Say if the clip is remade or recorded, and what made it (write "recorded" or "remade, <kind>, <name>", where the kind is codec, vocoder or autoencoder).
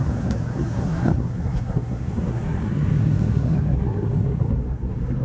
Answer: remade, codec, SNAC